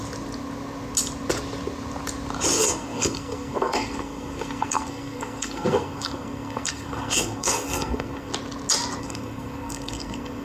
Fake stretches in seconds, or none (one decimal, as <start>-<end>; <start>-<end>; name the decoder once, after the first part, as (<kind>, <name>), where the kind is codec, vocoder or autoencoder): 2.6-8.3 (codec, SNAC); 9.0-10.4